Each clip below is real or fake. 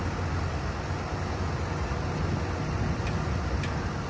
real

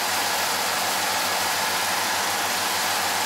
real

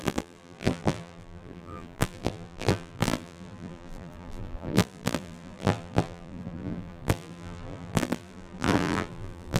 fake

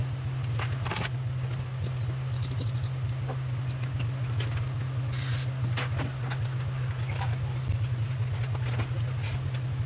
real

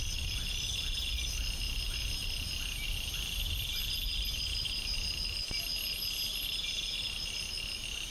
real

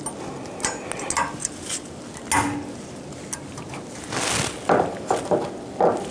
real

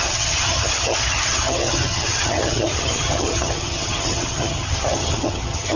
fake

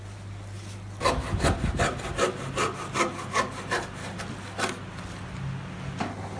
real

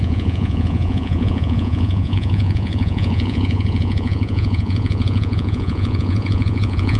fake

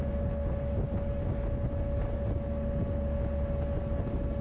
real